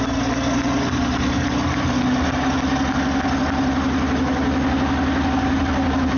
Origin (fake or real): real